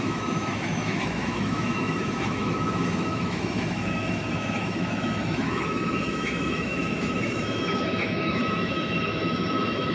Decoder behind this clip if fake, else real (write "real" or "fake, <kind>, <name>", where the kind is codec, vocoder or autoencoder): fake, autoencoder, DAC-VAE